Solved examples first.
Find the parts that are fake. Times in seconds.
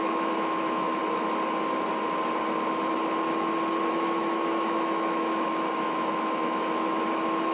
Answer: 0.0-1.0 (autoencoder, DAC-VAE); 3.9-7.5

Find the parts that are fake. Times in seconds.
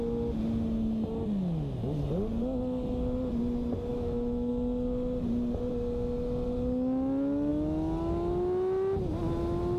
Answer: 3.9-4.5 (autoencoder, DAC-VAE)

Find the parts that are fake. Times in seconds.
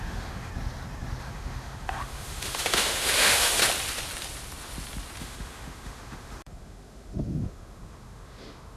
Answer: 0.0-0.5 (autoencoder, DAC-VAE); 1.2-3.6; 5.2-8.8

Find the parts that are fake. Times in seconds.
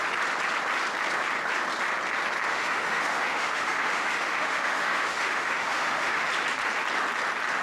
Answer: 2.5-6.3 (autoencoder, DAC-VAE)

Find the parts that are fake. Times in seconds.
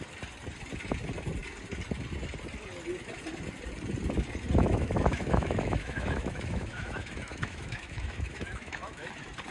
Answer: 4.6-9.1 (autoencoder, DAC-VAE)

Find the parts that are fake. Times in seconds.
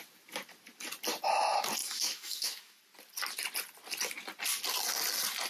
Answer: 1.8-2.8 (autoencoder, DAC-VAE)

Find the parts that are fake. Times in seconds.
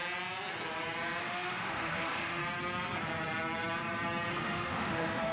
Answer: 1.2-2.4 (autoencoder, DAC-VAE); 4.3-5.3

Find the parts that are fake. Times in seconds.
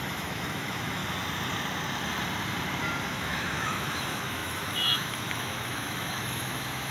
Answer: 0.0-1.0 (autoencoder, DAC-VAE); 3.1-6.9